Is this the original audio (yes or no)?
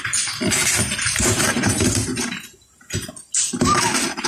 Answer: yes